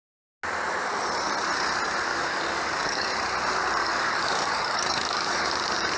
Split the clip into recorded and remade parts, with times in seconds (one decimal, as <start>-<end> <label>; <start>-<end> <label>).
0.0-2.1 recorded; 2.1-3.1 remade; 3.1-3.8 recorded; 3.8-5.5 remade; 5.5-6.0 recorded